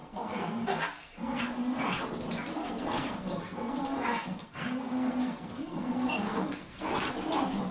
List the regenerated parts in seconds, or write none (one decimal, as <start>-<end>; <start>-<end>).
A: 0.0-1.4; 2.5-7.1